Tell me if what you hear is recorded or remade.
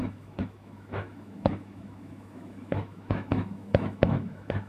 remade